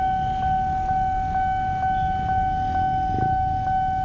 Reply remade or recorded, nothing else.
recorded